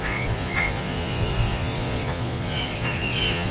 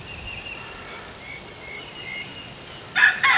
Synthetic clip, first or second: first